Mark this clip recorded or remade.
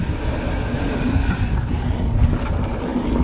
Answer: recorded